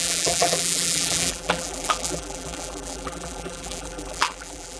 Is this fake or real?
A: fake